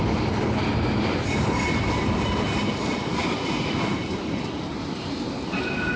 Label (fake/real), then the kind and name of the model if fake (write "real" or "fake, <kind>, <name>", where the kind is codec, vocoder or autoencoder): real